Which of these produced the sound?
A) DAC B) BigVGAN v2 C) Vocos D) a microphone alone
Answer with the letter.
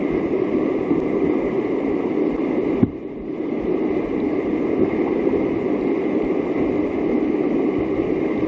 D